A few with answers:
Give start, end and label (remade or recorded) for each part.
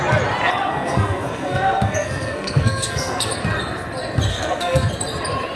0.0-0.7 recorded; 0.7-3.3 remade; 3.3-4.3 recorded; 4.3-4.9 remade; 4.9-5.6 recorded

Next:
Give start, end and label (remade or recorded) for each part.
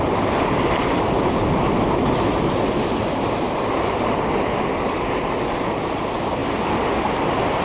0.0-7.6 recorded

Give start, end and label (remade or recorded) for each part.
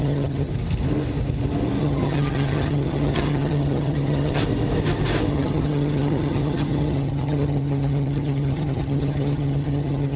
0.0-0.5 remade; 0.5-1.8 recorded; 1.8-4.4 remade; 4.4-5.3 recorded; 5.3-10.2 remade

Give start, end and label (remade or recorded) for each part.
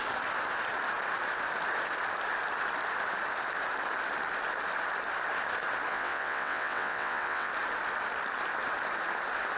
0.0-5.9 recorded; 5.9-7.5 remade; 7.5-9.6 recorded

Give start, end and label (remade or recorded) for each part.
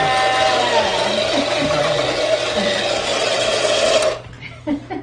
0.0-3.1 recorded; 3.1-3.9 remade; 3.9-5.0 recorded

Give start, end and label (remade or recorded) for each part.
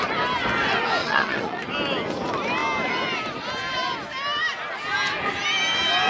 0.0-1.0 recorded; 1.0-1.6 remade; 1.6-6.1 recorded